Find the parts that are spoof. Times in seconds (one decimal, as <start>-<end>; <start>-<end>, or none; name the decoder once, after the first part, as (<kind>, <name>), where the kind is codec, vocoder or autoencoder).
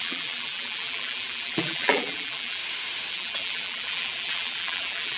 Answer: 0.0-2.6 (vocoder, BigVGAN v2); 3.1-5.2